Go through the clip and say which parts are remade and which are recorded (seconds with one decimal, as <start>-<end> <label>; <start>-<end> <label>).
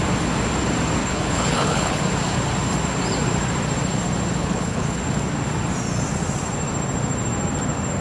0.0-1.0 recorded; 1.0-2.0 remade; 2.0-4.4 recorded; 4.4-5.0 remade; 5.0-8.0 recorded